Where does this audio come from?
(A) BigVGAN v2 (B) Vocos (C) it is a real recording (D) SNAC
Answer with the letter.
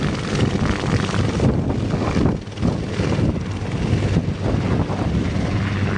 C